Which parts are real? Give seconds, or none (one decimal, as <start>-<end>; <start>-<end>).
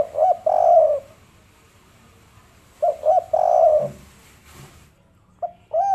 0.0-5.9